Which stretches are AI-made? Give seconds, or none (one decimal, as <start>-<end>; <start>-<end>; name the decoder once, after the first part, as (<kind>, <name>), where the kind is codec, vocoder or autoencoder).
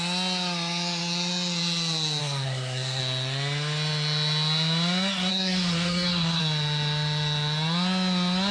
2.2-3.0 (codec, SNAC); 5.3-6.4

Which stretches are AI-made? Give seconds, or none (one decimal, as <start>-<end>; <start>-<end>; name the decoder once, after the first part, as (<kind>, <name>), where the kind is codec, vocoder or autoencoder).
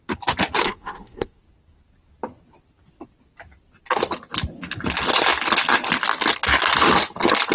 0.6-1.4 (codec, SNAC)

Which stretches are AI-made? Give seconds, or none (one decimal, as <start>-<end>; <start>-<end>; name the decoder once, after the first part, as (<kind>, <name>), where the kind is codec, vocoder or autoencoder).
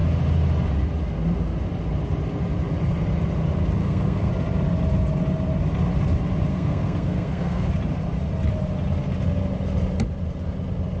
3.8-4.3 (codec, SNAC); 6.5-7.7